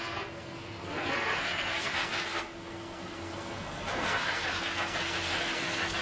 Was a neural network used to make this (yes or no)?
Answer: yes